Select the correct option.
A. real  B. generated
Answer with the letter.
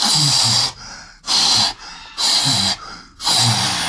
B